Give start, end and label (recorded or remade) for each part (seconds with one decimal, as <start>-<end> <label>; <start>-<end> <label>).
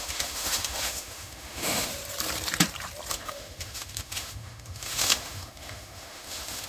0.0-1.9 remade; 1.9-3.1 recorded; 3.1-6.7 remade